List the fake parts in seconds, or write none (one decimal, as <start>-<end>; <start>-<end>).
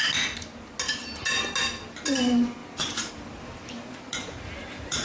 2.6-3.1